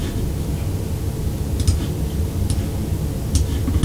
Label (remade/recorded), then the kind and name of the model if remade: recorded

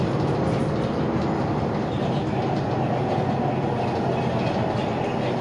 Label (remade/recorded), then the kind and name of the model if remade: recorded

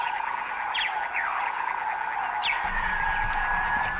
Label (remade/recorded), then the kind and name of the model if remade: recorded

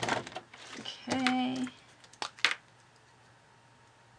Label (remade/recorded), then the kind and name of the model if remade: recorded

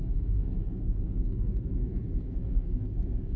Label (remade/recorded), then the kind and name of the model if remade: remade, codec, SNAC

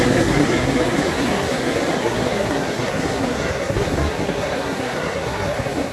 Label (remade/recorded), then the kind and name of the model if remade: remade, codec, SNAC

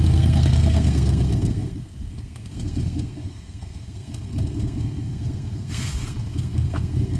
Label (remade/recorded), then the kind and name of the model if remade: remade, codec, SNAC